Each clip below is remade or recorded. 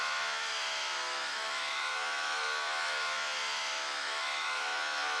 remade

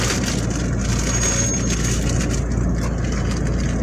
recorded